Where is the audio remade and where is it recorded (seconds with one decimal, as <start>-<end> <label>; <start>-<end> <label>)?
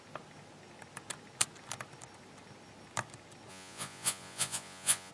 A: 0.0-3.5 recorded; 3.5-5.1 remade